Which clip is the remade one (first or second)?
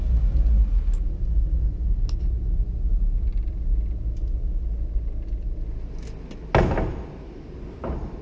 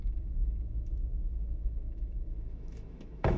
second